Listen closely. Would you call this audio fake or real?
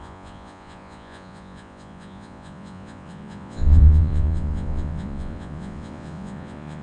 fake